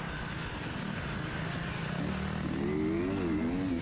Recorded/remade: recorded